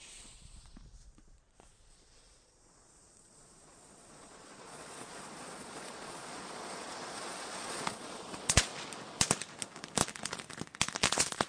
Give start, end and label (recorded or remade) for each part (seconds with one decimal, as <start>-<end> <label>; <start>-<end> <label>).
0.0-8.7 remade; 8.7-11.1 recorded; 11.1-11.5 remade